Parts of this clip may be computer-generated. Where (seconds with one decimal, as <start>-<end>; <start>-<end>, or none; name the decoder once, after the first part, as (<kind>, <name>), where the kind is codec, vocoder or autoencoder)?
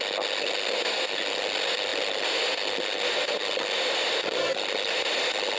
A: none